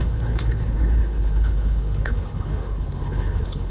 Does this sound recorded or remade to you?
remade